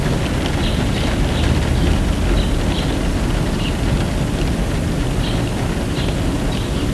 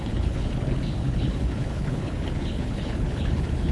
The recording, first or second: first